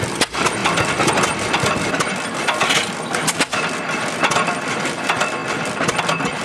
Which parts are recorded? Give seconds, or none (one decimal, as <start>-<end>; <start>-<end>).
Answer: 0.0-0.6; 1.1-6.4